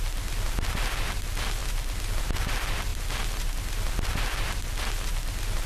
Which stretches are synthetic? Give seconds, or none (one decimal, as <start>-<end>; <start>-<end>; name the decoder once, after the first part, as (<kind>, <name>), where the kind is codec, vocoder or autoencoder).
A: none